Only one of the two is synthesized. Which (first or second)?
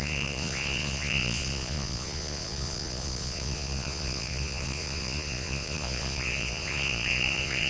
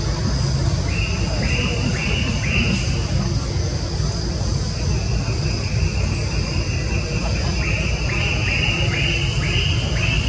first